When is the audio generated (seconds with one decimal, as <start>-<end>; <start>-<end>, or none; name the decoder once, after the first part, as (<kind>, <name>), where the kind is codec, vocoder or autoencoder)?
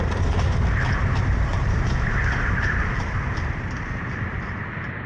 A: 1.5-4.6 (vocoder, BigVGAN v2)